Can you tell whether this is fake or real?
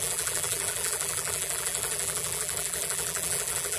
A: fake